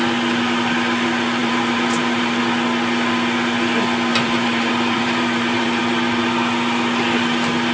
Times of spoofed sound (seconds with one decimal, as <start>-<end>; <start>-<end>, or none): 1.4-2.4; 4.1-5.8